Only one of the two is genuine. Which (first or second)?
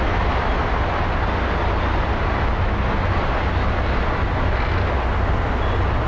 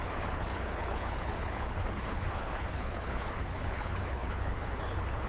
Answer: first